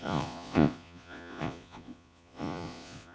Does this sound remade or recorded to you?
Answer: remade